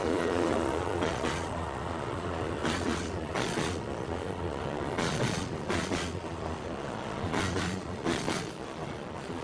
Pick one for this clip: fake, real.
fake